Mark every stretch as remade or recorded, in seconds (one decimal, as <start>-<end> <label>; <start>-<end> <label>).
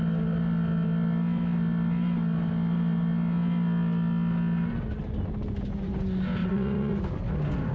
0.0-6.4 recorded; 6.4-7.0 remade; 7.0-7.7 recorded